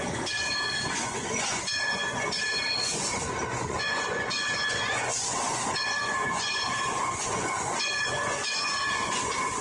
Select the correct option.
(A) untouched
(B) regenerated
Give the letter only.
B